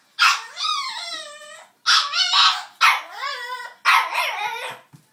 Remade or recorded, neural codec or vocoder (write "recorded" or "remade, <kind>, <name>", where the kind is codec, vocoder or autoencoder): recorded